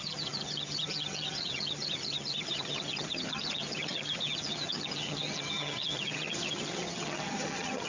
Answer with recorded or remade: remade